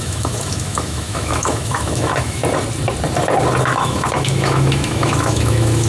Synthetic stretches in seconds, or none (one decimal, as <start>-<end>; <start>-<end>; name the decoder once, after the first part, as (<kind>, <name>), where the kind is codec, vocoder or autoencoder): 0.0-2.4 (autoencoder, DAC-VAE); 3.6-5.9